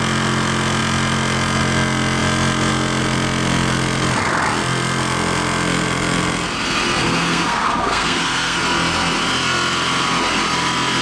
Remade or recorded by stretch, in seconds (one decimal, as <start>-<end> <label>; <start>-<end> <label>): 0.0-7.0 recorded; 7.0-8.6 remade; 8.6-11.0 recorded